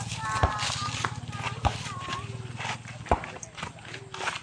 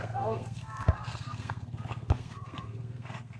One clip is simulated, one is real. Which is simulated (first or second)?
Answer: second